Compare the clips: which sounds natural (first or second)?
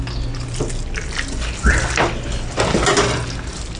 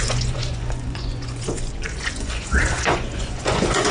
first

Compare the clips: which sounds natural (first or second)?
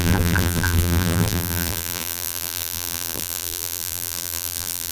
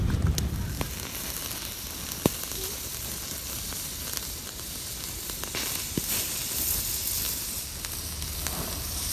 second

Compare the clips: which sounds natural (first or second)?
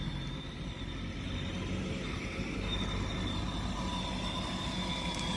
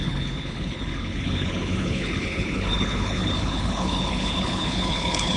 first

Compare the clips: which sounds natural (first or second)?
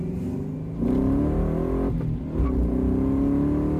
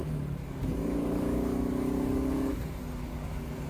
first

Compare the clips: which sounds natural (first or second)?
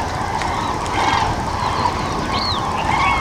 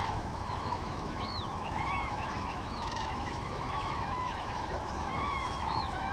first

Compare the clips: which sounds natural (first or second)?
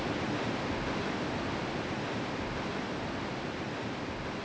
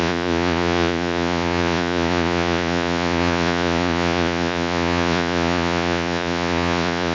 first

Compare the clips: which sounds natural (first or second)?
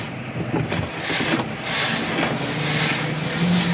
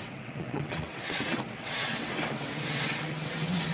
first